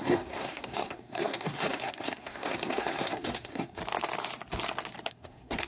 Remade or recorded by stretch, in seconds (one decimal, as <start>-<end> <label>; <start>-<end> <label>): 0.0-3.8 remade; 3.8-5.1 recorded; 5.1-5.7 remade